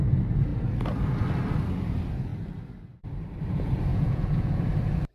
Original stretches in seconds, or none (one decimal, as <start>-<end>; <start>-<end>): 0.0-3.9; 4.6-5.1